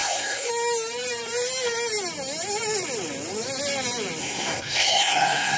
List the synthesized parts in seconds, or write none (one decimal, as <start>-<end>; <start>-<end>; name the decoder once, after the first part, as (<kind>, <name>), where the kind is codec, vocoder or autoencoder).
0.0-0.5 (codec, SNAC); 4.2-5.6